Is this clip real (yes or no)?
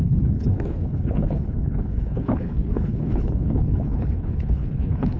no